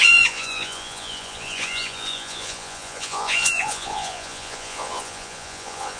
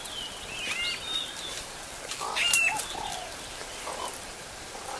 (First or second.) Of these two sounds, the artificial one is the first